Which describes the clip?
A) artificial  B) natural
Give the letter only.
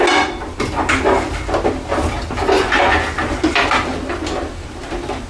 B